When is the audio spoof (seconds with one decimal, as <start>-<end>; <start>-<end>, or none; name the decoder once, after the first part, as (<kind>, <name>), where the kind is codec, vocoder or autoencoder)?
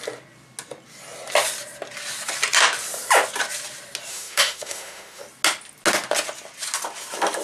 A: 4.1-5.2 (autoencoder, DAC-VAE)